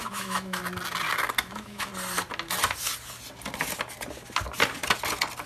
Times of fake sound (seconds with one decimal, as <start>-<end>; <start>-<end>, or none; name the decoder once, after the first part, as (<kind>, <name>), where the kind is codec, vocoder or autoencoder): 0.0-0.6 (autoencoder, DAC-VAE); 1.4-1.9